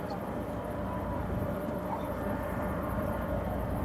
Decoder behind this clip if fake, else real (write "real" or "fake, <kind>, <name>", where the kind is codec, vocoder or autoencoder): fake, vocoder, BigVGAN v2